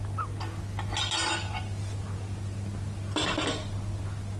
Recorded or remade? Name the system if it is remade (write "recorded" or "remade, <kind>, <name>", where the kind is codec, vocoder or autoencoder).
recorded